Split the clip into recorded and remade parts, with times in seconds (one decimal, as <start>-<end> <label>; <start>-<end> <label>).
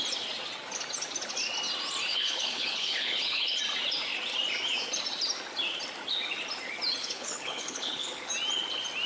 0.0-2.1 recorded; 2.1-3.6 remade; 3.6-7.0 recorded; 7.0-8.3 remade; 8.3-9.1 recorded